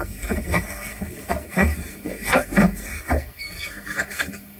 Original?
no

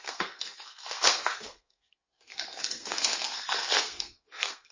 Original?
no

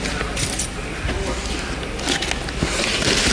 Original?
yes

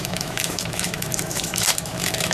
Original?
no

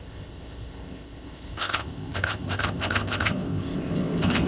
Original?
no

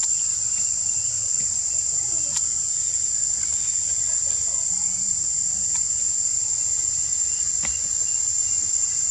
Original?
yes